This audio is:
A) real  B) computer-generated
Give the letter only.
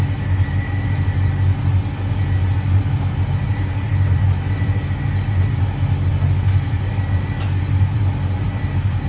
A